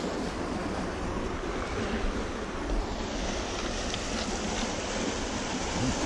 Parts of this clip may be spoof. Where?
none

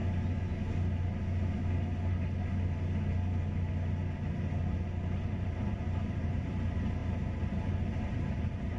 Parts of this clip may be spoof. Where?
5.2-7.0 (vocoder, BigVGAN v2); 7.5-8.8

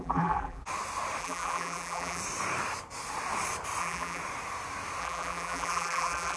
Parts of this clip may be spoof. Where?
0.0-0.6 (vocoder, BigVGAN v2); 1.2-2.2; 3.8-4.2; 5.0-6.4

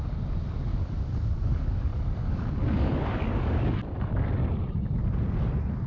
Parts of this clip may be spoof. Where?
0.7-4.2 (codec, DAC)

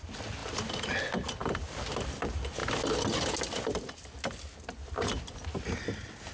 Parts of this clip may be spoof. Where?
none